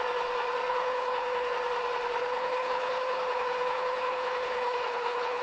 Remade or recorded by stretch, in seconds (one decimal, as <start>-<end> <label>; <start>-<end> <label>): 0.0-0.7 recorded; 0.7-1.5 remade; 1.5-2.2 recorded; 2.2-5.4 remade